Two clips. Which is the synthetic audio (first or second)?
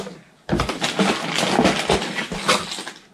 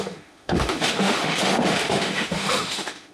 second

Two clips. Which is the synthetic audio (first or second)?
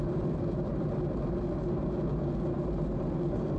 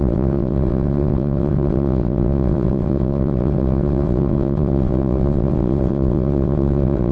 second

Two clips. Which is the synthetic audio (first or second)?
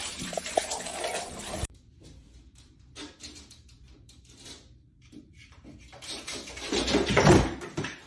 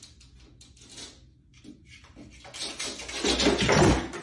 first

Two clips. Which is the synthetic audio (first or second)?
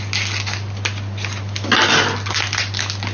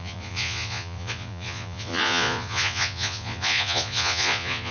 second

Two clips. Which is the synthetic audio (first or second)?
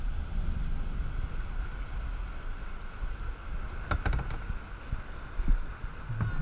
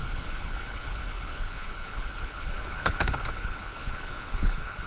second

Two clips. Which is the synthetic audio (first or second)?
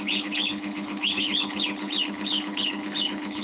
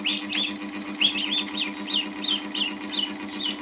first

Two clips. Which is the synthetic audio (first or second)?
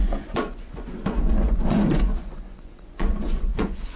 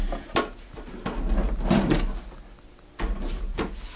first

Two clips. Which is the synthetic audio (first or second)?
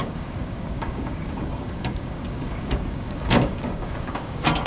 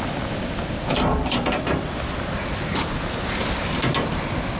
first